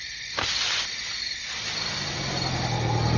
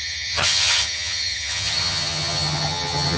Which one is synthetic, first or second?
second